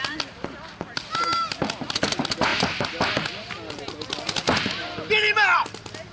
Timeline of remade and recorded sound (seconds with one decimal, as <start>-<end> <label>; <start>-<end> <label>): 0.0-6.1 recorded